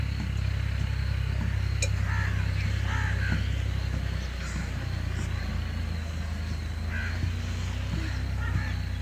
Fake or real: real